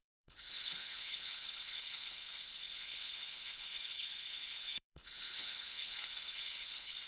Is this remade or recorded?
remade